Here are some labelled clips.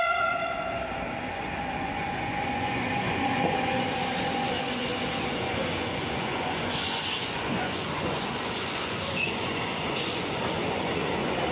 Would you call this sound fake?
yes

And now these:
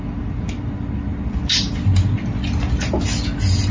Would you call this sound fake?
no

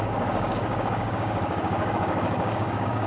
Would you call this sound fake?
yes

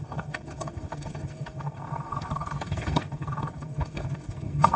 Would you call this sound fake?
yes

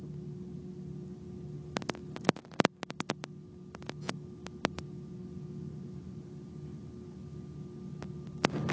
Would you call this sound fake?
no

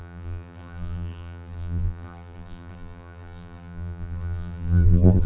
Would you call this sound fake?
yes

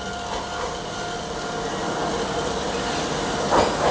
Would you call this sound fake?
no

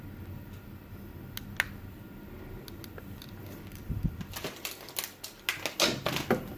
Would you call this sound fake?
no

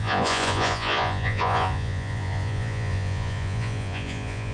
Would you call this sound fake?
yes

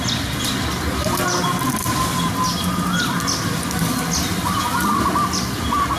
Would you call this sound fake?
no